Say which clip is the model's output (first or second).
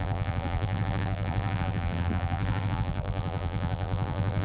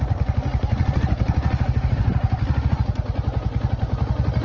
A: first